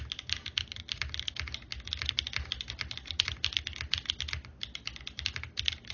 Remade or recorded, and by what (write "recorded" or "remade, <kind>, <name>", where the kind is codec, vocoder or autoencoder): recorded